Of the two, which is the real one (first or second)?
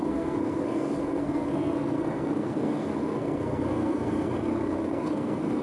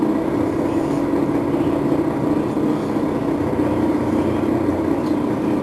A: second